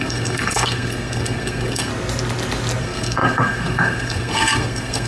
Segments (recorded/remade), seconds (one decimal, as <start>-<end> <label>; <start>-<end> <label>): 0.0-1.9 remade; 1.9-2.8 recorded; 2.8-5.1 remade